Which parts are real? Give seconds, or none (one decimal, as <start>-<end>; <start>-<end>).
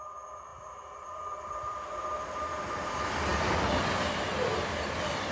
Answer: 0.0-0.5; 1.9-5.3